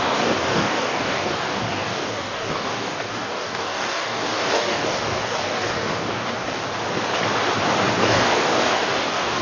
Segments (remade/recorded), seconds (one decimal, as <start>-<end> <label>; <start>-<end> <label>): 0.0-6.6 remade; 6.6-7.9 recorded; 7.9-9.4 remade